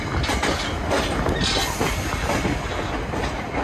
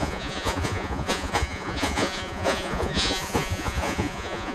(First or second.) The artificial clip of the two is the second